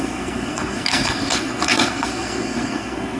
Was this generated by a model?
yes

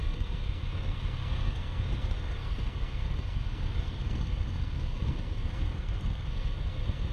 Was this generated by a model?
yes